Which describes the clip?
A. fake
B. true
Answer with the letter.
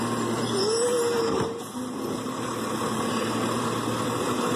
B